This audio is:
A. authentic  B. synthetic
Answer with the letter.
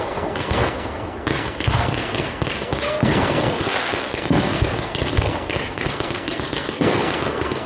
B